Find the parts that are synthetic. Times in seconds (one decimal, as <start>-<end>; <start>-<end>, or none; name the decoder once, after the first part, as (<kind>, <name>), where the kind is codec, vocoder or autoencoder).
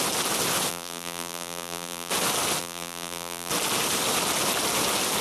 0.7-2.1 (vocoder, BigVGAN v2); 2.6-3.5